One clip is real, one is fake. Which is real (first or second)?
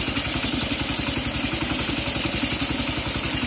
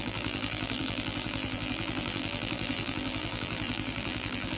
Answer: first